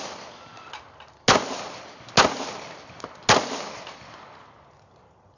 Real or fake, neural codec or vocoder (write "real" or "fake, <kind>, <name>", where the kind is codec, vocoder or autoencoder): real